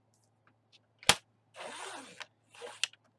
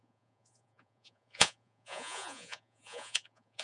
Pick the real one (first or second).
first